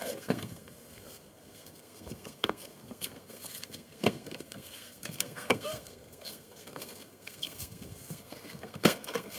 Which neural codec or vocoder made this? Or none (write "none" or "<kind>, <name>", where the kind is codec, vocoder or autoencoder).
codec, SNAC